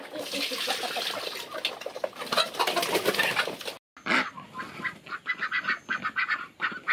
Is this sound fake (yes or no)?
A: no